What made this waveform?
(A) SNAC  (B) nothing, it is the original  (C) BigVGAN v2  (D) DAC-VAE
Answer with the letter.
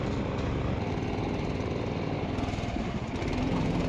B